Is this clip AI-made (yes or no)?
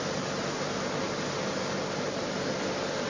no